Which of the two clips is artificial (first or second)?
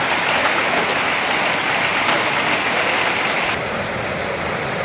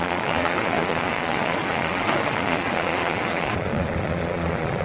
second